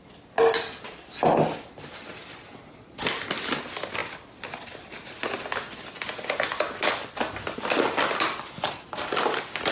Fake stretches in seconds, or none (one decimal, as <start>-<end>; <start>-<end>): none